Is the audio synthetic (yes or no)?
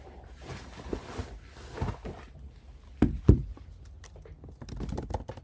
no